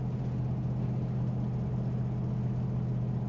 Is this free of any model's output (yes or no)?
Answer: yes